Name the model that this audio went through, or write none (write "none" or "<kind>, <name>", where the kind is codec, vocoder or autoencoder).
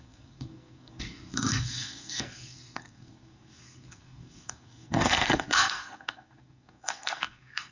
codec, SNAC